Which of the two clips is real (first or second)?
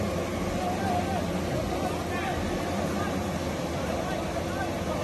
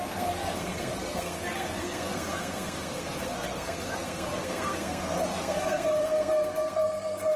first